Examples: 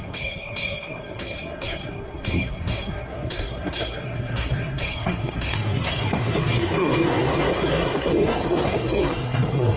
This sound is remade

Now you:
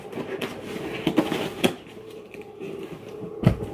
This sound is recorded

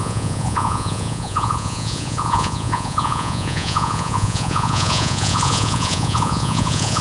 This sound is remade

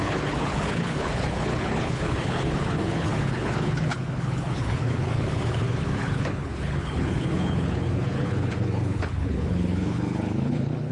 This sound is remade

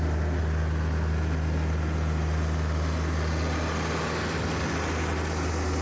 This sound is recorded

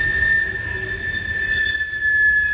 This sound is recorded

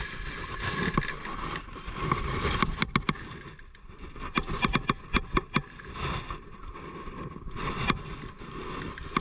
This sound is recorded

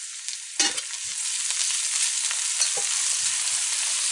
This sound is recorded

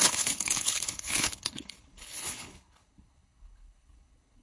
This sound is remade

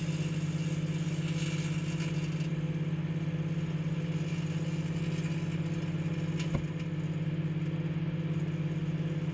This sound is recorded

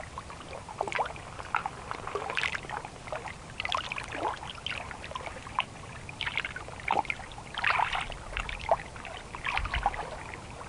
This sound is recorded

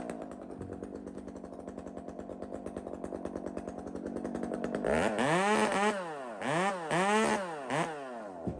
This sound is recorded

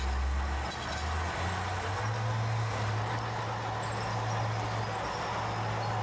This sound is recorded